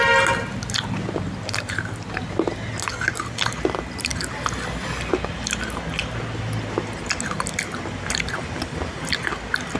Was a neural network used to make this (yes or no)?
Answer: no